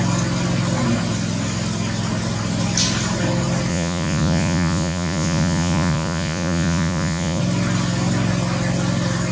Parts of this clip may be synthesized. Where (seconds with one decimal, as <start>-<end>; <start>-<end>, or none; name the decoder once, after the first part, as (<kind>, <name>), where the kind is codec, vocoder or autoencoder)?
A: 3.7-7.4 (vocoder, Vocos)